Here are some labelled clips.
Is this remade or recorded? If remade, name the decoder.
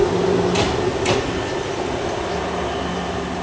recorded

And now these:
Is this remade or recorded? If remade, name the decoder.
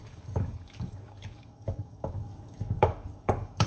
remade, codec, DAC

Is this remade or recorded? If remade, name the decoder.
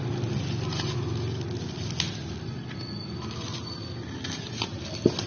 recorded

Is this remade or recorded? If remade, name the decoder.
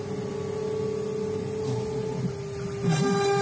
recorded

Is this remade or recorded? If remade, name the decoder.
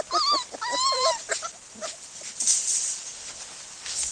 recorded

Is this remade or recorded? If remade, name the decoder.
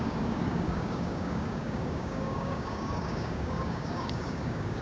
remade, codec, DAC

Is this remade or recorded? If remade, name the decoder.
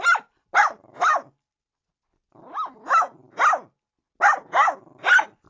recorded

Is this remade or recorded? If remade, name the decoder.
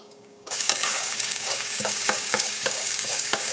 remade, codec, DAC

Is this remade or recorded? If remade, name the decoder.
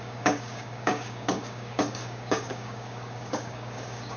remade, codec, DAC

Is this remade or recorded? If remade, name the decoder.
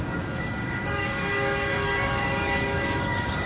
remade, codec, DAC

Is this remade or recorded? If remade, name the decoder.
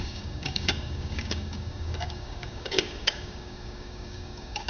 remade, codec, DAC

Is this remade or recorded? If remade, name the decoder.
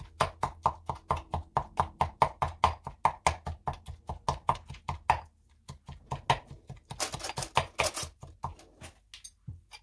recorded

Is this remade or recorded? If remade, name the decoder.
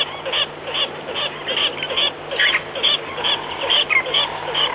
recorded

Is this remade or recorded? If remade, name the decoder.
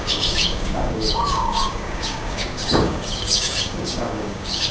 remade, codec, DAC